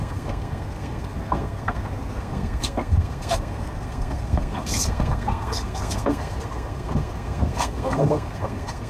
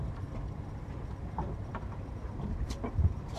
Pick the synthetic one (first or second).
first